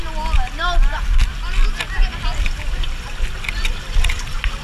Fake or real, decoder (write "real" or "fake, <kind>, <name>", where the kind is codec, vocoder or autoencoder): real